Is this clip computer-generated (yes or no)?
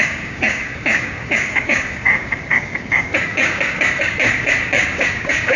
yes